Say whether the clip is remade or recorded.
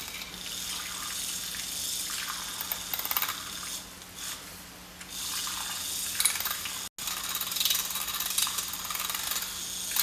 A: recorded